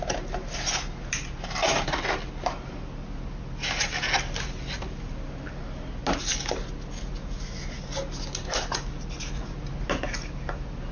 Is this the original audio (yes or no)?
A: yes